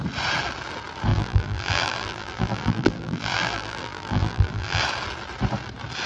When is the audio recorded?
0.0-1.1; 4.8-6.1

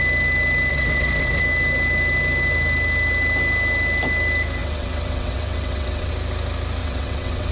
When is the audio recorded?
0.0-0.7; 1.4-4.6; 6.1-6.8

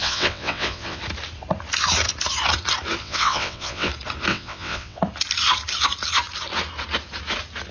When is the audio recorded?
1.0-3.0; 3.9-4.3; 5.0-7.7